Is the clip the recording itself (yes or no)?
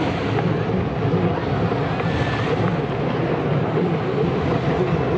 yes